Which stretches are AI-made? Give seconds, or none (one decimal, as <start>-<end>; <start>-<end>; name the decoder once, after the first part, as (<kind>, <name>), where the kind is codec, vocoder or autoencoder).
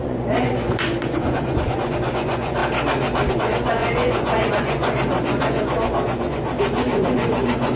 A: 0.0-2.6 (vocoder, Vocos); 3.3-7.8